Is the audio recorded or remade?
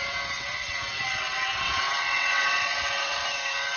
remade